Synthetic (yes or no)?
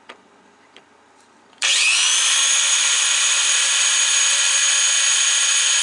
yes